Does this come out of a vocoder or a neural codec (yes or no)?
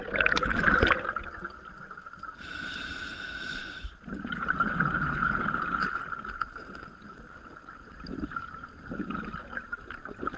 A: no